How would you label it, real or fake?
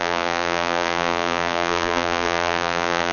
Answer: fake